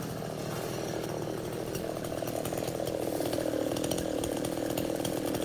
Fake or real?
real